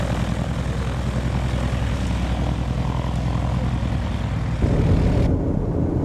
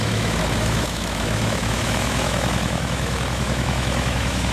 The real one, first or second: first